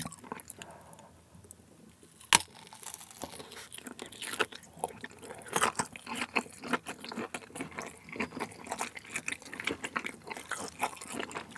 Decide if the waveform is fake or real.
real